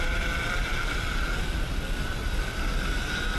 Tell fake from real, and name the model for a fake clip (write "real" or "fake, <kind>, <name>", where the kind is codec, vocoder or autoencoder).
real